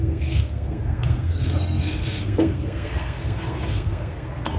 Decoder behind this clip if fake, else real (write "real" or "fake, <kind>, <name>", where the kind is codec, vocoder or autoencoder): fake, codec, SNAC